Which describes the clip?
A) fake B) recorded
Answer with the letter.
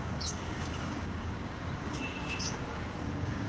A